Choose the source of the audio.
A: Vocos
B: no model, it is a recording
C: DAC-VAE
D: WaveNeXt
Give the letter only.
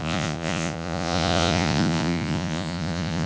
A